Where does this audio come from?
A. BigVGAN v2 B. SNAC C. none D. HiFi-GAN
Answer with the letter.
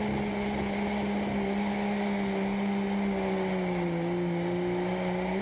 C